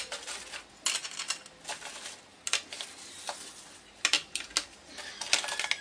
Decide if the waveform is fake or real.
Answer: real